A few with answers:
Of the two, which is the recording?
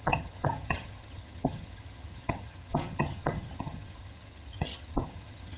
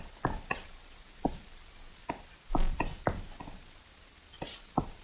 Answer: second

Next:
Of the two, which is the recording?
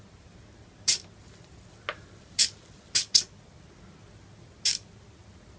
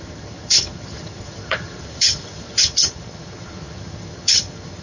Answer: first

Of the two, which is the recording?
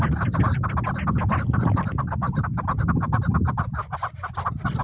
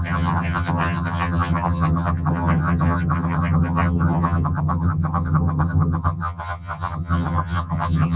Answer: first